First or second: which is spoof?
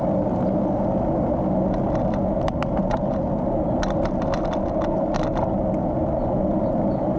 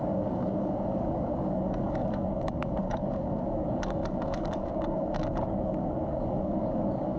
second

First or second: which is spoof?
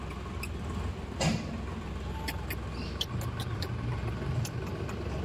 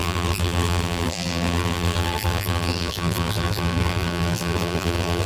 second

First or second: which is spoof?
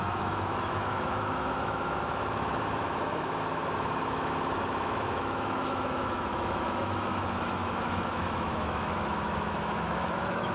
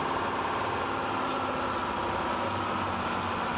first